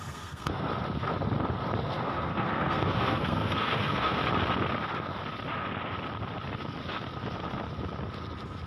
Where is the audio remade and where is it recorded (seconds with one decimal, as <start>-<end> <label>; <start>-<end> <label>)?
0.0-0.7 remade; 0.7-2.0 recorded; 2.0-4.2 remade; 4.2-8.7 recorded